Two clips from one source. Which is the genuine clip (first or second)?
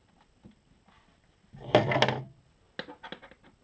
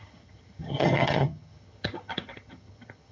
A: first